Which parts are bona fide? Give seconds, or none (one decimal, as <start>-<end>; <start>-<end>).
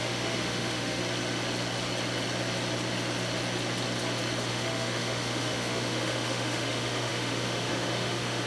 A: 1.0-4.5